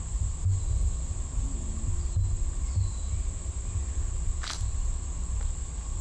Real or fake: real